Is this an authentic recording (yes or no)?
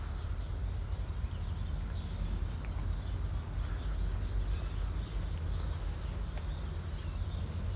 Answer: yes